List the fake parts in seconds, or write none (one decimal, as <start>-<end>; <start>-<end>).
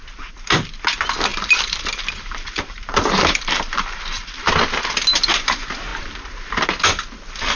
1.3-4.5; 5.9-6.7